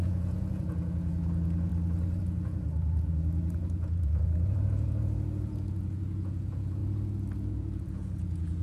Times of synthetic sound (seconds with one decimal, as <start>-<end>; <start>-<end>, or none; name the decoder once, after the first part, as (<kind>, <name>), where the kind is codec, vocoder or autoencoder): 0.0-1.7 (vocoder, Vocos); 2.2-6.8; 7.5-8.6

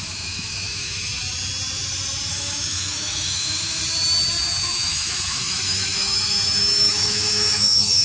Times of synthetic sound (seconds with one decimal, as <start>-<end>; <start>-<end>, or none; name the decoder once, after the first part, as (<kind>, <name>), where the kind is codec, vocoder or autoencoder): 0.0-1.2 (autoencoder, DAC-VAE); 2.3-3.8; 4.4-8.0

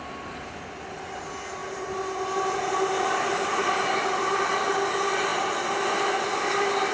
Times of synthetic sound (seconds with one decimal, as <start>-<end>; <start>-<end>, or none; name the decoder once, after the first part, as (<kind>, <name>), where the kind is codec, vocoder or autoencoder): 1.6-3.3 (vocoder, BigVGAN v2)

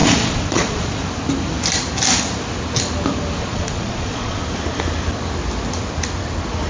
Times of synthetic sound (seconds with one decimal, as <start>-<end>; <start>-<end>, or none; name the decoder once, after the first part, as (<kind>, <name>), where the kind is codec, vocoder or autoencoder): 0.0-1.0 (vocoder, Vocos); 3.4-4.4

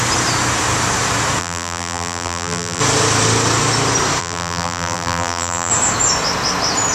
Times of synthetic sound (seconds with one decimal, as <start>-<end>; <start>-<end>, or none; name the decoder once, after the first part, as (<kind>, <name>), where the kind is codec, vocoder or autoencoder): 1.4-2.8 (vocoder, BigVGAN v2); 4.2-5.7

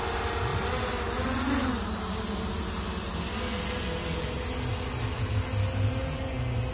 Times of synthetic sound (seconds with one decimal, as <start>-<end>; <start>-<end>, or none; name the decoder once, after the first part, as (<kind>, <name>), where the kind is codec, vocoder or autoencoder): none